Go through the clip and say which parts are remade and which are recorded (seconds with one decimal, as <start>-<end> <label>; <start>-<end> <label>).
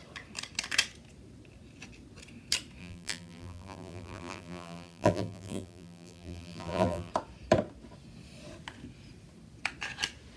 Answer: 0.0-2.8 recorded; 2.8-7.1 remade; 7.1-10.4 recorded